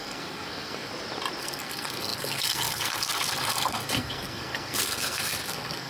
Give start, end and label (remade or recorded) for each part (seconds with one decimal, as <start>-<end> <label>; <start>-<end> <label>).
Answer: 0.0-0.9 remade; 0.9-1.4 recorded; 1.4-5.9 remade